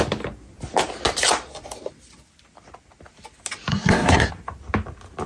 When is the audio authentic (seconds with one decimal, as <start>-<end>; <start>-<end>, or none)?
0.0-3.7; 4.3-5.3